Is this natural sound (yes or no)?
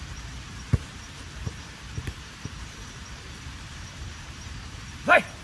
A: no